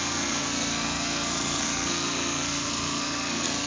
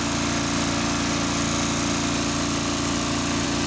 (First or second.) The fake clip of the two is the first